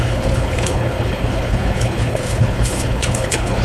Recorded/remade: remade